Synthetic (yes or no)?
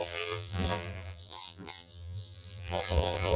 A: yes